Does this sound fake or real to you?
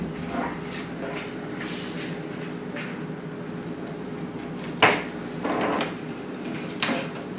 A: real